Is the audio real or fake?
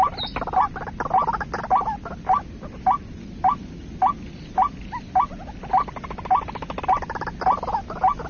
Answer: real